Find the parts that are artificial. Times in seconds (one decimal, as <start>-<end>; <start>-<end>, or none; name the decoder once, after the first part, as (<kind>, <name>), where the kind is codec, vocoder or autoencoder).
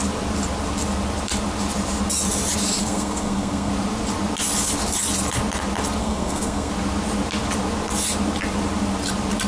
2.8-3.7 (codec, SNAC); 6.0-6.7